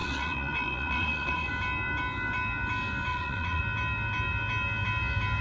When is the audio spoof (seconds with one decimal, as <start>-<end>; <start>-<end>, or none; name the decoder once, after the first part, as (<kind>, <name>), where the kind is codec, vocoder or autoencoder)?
0.0-1.5 (vocoder, Vocos); 3.1-3.6